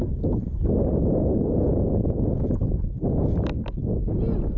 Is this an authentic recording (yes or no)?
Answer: yes